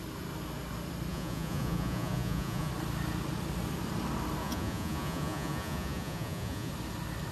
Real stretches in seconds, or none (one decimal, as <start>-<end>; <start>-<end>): 0.0-1.1; 2.7-4.4; 6.7-7.3